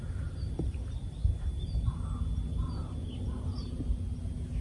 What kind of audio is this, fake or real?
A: real